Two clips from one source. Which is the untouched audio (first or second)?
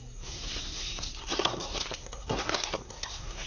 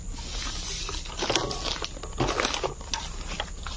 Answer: second